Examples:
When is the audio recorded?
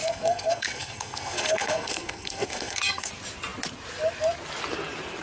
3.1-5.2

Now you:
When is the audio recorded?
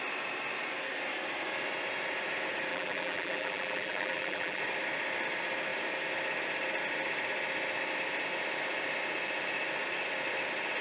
0.0-2.7; 4.6-10.8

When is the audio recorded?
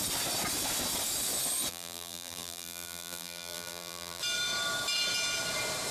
0.0-1.7; 4.2-5.9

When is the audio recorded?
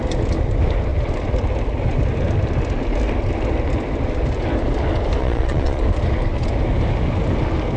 0.0-5.2; 5.8-7.8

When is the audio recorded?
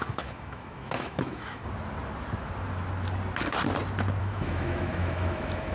1.6-4.2